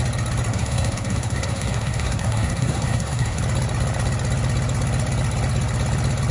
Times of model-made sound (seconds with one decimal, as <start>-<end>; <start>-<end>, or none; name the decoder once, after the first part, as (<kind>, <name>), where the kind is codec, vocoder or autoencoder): 0.5-3.4 (codec, SNAC)